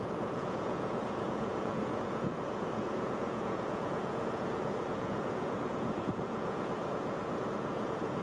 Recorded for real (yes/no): no